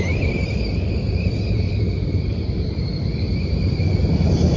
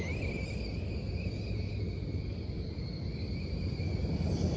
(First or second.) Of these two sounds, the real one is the second